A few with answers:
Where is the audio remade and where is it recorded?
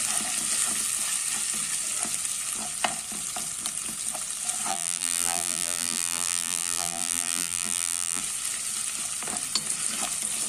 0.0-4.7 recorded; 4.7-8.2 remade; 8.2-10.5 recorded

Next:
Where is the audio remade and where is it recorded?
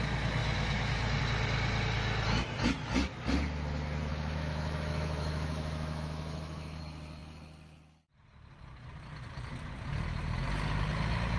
0.0-0.4 recorded; 0.4-1.2 remade; 1.2-4.1 recorded; 4.1-6.8 remade; 6.8-11.4 recorded